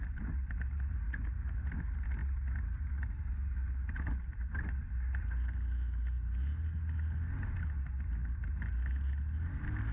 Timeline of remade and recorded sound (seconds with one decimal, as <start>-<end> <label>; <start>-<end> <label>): 0.0-9.9 recorded